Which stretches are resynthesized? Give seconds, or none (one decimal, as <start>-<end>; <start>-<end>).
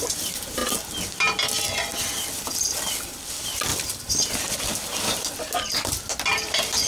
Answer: 0.0-0.6; 3.2-3.7; 5.0-6.9